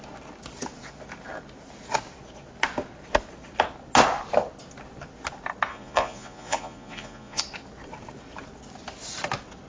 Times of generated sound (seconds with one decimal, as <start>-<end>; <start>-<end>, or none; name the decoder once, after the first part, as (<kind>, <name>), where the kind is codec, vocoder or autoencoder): 5.7-7.4 (vocoder, Vocos)